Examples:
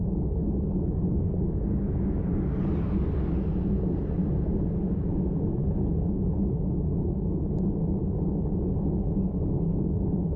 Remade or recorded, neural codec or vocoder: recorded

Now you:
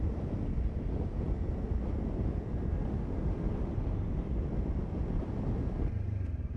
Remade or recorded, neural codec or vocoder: recorded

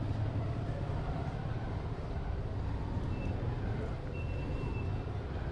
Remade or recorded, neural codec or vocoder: recorded